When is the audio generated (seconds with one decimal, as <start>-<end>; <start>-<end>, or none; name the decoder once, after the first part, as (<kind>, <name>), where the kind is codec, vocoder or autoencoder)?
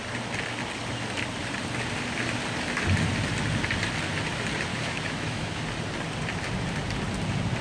4.7-5.6 (autoencoder, DAC-VAE)